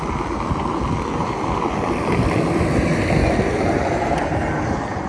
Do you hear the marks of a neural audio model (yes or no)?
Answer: no